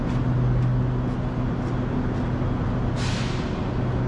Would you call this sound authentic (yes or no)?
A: yes